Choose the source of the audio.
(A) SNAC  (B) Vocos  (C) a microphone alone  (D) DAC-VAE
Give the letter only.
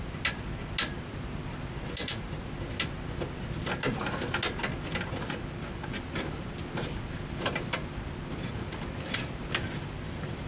C